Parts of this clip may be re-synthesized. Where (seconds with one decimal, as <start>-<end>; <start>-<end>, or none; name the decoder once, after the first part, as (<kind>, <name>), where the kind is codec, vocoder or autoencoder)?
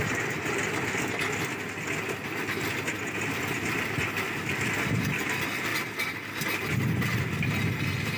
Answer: none